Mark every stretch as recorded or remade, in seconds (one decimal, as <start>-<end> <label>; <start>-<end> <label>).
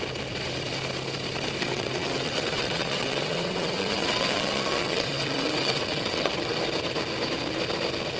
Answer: 0.0-1.6 recorded; 1.6-6.5 remade; 6.5-8.2 recorded